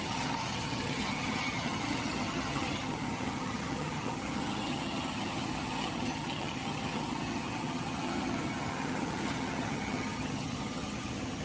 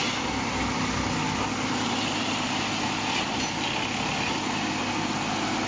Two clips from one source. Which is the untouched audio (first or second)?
second